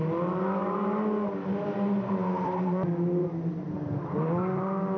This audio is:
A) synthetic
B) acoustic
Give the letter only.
B